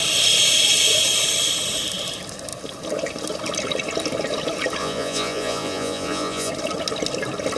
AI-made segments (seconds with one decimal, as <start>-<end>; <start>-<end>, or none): 4.8-6.5